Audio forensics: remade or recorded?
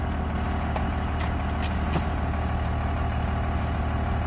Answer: recorded